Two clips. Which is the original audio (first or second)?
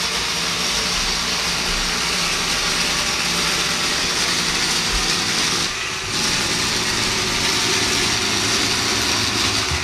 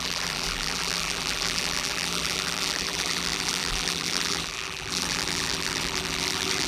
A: first